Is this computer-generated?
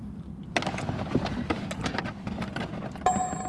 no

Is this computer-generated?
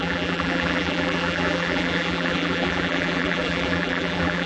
yes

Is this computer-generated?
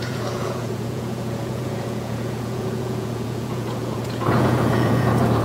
yes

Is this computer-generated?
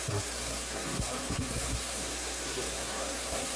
yes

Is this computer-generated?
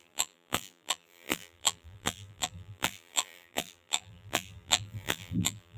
yes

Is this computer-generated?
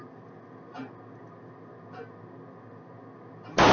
no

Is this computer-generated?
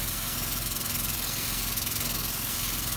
yes